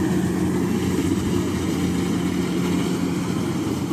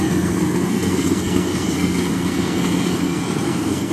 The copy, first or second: second